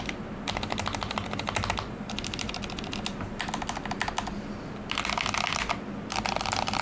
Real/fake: real